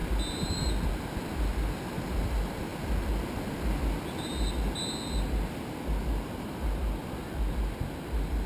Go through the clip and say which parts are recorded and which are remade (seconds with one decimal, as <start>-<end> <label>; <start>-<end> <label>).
0.0-8.5 recorded